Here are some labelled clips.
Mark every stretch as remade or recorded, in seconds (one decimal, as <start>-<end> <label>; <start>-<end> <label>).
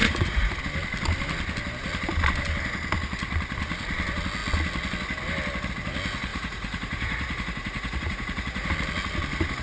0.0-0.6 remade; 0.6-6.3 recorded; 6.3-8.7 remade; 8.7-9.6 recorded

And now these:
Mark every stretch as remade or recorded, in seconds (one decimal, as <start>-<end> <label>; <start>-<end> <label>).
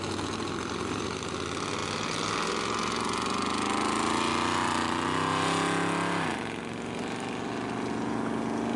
0.0-8.8 recorded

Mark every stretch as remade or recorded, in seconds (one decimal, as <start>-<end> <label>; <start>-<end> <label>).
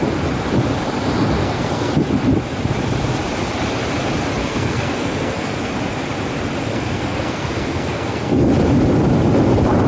0.0-1.4 recorded; 1.4-1.9 remade; 1.9-4.4 recorded; 4.4-5.7 remade; 5.7-6.7 recorded; 6.7-8.5 remade; 8.5-9.9 recorded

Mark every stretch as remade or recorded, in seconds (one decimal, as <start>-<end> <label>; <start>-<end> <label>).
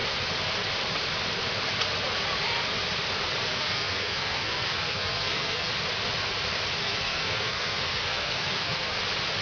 0.0-3.5 recorded; 3.5-5.7 remade; 5.7-6.8 recorded; 6.8-9.0 remade; 9.0-9.4 recorded